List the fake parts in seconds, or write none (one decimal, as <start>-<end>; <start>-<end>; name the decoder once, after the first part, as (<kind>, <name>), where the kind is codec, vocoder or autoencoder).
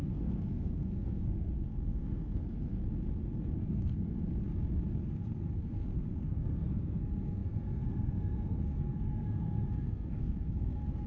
0.0-2.8 (codec, SNAC); 3.6-4.3; 5.0-11.1